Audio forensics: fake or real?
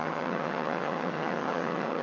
fake